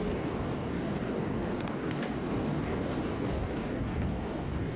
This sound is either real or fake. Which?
fake